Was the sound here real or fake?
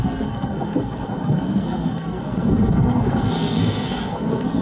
fake